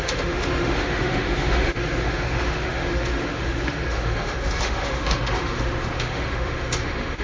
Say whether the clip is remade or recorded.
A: remade